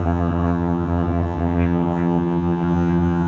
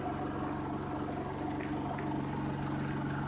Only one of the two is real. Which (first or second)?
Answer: second